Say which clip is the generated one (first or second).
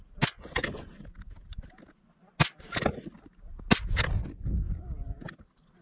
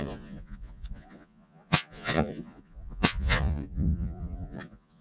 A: second